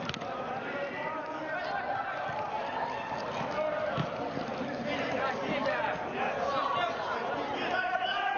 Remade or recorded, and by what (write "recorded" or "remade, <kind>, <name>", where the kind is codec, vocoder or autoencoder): recorded